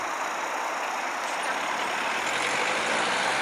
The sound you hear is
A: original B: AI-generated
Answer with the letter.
A